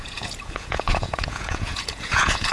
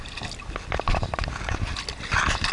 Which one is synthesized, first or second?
first